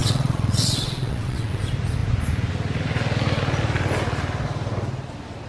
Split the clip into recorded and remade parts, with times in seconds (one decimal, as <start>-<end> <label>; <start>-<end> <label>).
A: 0.0-1.6 remade; 1.6-5.5 recorded